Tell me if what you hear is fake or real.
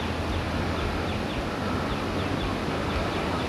real